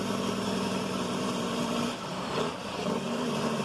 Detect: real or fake fake